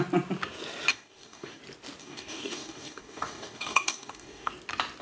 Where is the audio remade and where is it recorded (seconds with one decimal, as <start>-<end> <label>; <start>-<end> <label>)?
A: 0.0-0.9 recorded; 0.9-1.6 remade; 1.6-2.0 recorded; 2.0-4.5 remade; 4.5-5.0 recorded

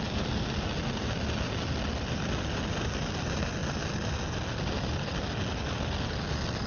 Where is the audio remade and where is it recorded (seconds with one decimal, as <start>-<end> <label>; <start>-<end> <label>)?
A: 0.0-6.7 recorded

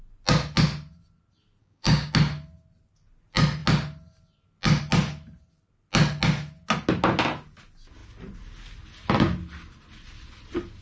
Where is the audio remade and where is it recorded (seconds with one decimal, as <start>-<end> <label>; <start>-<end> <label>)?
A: 0.0-1.6 recorded; 1.6-2.1 remade; 2.1-10.8 recorded

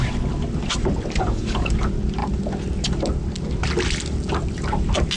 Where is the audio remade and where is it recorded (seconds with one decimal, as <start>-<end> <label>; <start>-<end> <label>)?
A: 0.0-1.2 recorded; 1.2-1.7 remade; 1.7-5.2 recorded

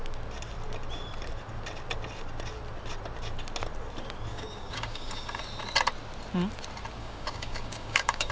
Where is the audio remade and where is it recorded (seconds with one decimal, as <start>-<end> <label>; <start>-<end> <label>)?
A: 0.0-4.3 recorded; 4.3-5.4 remade; 5.4-7.0 recorded; 7.0-8.3 remade

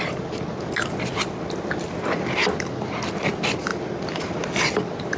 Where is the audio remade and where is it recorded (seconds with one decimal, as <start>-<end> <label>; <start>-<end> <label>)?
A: 0.0-5.2 recorded